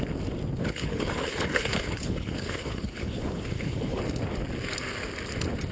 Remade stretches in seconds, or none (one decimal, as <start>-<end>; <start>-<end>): 0.6-4.0